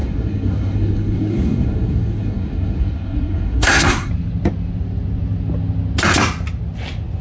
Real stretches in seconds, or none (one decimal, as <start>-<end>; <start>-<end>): 4.1-7.2